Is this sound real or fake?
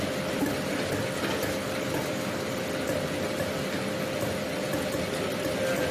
real